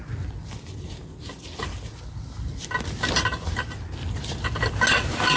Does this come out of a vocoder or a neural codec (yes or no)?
no